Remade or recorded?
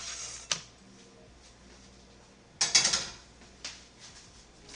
recorded